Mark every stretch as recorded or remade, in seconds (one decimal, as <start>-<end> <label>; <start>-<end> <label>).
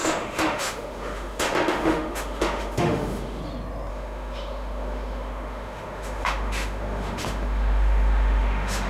0.0-3.4 remade; 3.4-3.9 recorded; 3.9-8.9 remade